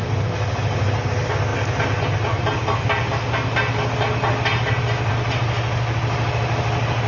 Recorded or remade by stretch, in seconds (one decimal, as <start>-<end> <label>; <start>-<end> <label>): 0.0-7.1 recorded